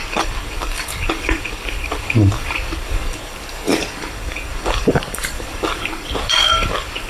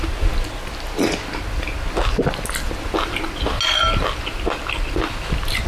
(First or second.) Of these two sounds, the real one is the second